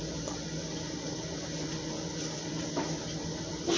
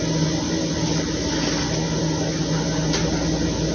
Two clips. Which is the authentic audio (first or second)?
second